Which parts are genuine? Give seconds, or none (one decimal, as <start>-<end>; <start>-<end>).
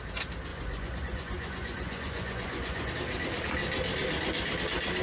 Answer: 0.0-0.5; 2.9-5.0